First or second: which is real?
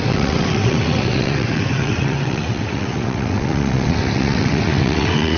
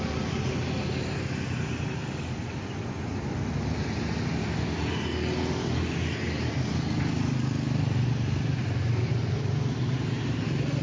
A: second